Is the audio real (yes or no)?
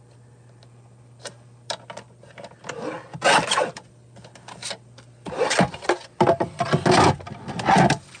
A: yes